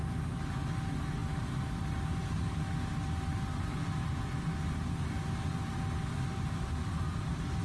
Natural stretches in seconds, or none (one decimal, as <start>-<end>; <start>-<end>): 0.0-7.6